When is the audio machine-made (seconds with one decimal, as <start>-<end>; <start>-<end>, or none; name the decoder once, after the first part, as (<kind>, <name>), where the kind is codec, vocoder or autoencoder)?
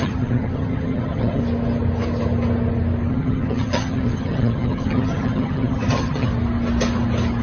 0.0-1.4 (vocoder, HiFi-GAN); 3.1-6.3